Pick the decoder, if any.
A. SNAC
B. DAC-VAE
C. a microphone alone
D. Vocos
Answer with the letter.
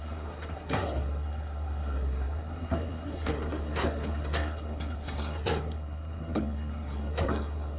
A